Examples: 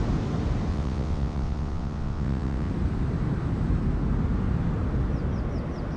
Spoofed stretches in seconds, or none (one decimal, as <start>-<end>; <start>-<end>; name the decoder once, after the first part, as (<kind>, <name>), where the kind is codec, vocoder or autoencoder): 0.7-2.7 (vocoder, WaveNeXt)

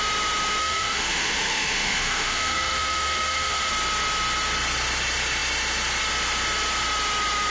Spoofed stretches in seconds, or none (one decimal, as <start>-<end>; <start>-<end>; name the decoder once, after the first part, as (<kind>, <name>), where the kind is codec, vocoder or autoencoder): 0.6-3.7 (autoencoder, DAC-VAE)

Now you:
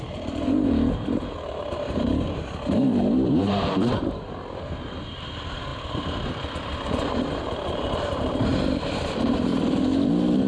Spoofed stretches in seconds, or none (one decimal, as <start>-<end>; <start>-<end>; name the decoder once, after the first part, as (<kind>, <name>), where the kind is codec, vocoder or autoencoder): 0.0-5.7 (vocoder, BigVGAN v2); 8.0-8.5; 9.0-9.5; 10.1-10.5